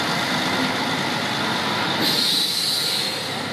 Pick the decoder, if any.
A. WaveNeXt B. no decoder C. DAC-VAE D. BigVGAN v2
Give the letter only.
B